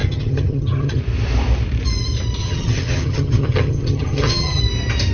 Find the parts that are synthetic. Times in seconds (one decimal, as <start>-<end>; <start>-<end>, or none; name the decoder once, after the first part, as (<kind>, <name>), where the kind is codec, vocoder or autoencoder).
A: 0.0-1.0 (vocoder, HiFi-GAN); 2.4-4.6